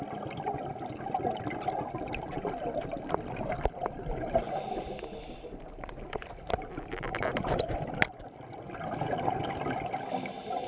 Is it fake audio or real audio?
real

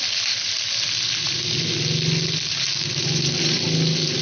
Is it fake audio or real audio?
real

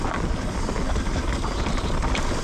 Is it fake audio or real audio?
real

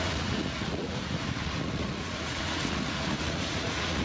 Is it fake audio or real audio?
fake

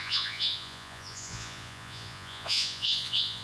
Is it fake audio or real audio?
fake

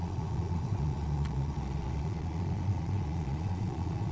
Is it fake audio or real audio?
fake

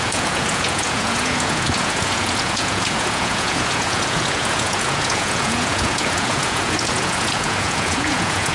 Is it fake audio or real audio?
fake